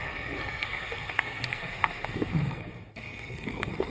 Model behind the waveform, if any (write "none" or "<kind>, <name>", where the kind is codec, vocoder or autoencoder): codec, SNAC